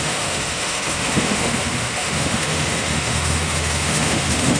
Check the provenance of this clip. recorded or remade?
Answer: remade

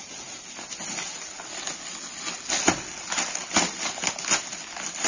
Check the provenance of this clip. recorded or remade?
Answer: recorded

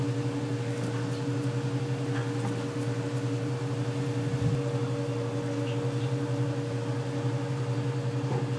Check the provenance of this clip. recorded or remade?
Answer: recorded